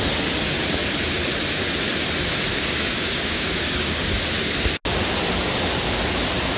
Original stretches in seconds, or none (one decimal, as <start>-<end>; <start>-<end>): 0.0-2.5; 4.1-6.6